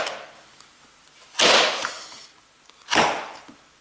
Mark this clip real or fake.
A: real